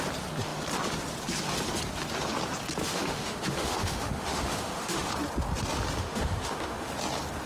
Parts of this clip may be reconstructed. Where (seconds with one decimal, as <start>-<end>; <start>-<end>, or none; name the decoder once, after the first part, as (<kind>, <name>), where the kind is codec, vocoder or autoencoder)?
2.8-5.1 (autoencoder, DAC-VAE); 6.0-6.9